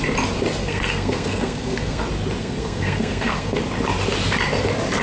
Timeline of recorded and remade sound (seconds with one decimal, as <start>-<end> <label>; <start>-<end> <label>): 0.0-0.6 recorded; 0.6-2.0 remade; 2.0-2.4 recorded; 2.4-3.6 remade; 3.6-5.0 recorded